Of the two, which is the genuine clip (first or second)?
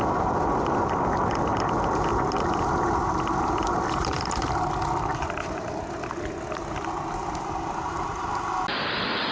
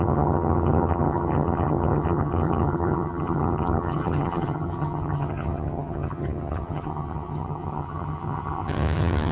first